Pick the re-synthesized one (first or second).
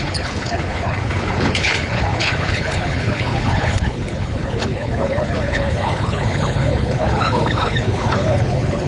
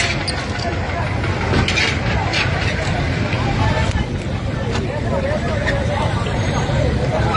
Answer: first